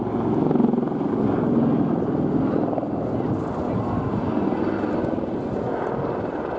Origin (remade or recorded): recorded